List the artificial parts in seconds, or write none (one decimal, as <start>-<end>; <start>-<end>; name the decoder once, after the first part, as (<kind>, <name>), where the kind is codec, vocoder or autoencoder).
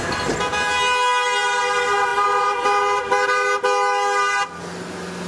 none